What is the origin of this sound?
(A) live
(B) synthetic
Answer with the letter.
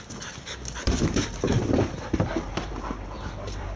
B